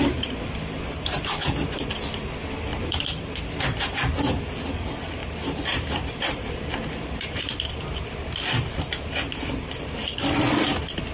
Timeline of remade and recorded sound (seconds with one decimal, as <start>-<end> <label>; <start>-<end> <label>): 0.0-2.7 recorded; 2.7-3.4 remade; 3.4-5.2 recorded; 5.2-10.2 remade; 10.2-11.1 recorded